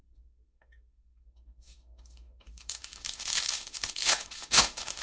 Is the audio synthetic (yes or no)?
yes